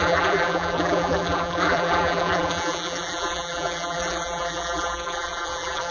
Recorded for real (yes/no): no